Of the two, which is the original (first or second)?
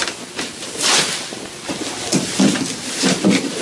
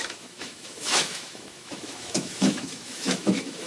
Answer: first